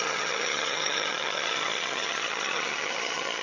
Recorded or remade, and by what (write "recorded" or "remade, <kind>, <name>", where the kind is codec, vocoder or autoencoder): remade, vocoder, HiFi-GAN